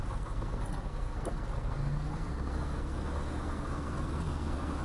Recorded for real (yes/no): no